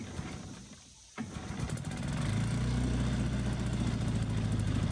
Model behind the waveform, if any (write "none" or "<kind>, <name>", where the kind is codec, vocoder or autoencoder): none